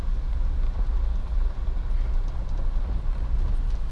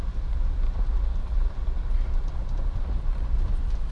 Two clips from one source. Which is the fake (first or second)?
second